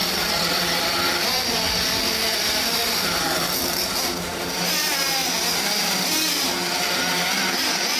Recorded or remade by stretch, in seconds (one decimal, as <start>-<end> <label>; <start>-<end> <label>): 0.0-4.7 remade; 4.7-8.0 recorded